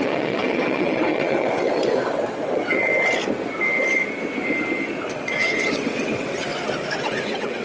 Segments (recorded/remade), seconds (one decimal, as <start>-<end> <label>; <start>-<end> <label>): 0.0-2.9 remade; 2.9-5.0 recorded; 5.0-6.5 remade; 6.5-7.0 recorded; 7.0-7.6 remade